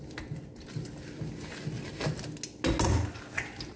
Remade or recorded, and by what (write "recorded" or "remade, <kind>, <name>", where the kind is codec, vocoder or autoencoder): recorded